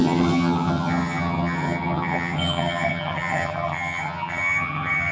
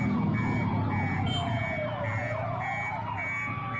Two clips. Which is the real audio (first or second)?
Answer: second